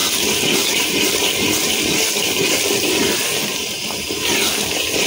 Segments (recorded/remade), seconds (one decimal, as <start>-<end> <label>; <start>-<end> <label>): 0.0-3.5 recorded; 3.5-4.3 remade; 4.3-5.1 recorded

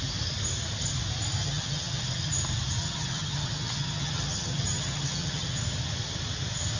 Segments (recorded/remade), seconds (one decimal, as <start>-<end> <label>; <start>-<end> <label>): 0.0-1.4 recorded; 1.4-2.3 remade; 2.3-2.8 recorded; 2.8-5.6 remade; 5.6-6.8 recorded

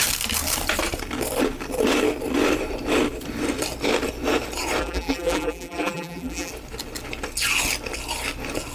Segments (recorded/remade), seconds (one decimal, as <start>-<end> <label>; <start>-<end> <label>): 0.0-4.8 recorded; 4.8-6.5 remade; 6.5-8.7 recorded

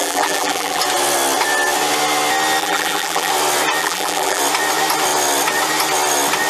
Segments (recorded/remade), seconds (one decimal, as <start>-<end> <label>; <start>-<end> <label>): 0.0-0.8 remade; 0.8-2.6 recorded; 2.6-3.3 remade; 3.3-3.8 recorded; 3.8-4.4 remade; 4.4-6.5 recorded

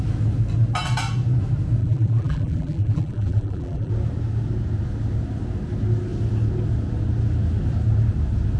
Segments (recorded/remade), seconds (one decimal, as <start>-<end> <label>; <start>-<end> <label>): 0.0-1.8 recorded; 1.8-3.9 remade; 3.9-8.6 recorded

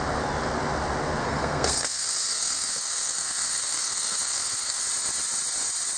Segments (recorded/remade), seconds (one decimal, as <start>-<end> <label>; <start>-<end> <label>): 0.0-1.2 recorded; 1.2-4.8 remade; 4.8-6.0 recorded

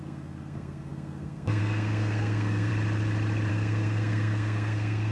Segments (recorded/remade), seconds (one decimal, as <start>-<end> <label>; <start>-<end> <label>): 0.0-2.7 remade; 2.7-3.5 recorded; 3.5-5.1 remade